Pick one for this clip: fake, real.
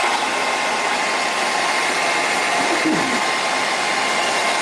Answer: real